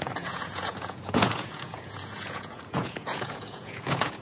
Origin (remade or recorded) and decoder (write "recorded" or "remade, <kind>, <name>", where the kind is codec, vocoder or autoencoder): remade, vocoder, Vocos